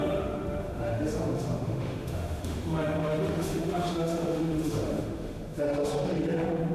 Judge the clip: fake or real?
fake